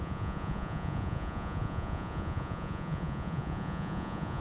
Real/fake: fake